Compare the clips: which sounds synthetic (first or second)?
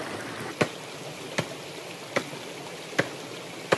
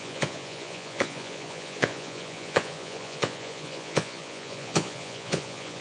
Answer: second